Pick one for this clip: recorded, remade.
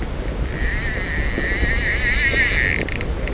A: recorded